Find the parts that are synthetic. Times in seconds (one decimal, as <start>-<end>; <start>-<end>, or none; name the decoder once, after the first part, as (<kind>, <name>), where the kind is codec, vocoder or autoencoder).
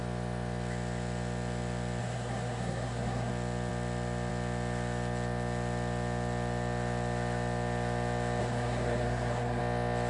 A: 2.0-3.3 (codec, SNAC); 8.4-9.6